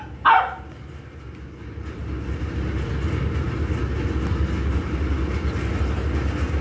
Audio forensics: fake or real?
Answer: real